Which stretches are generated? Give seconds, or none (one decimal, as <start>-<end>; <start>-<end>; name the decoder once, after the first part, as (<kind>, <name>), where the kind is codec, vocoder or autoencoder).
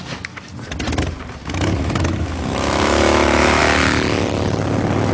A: 1.4-3.6 (autoencoder, DAC-VAE)